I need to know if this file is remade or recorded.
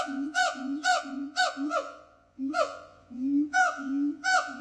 remade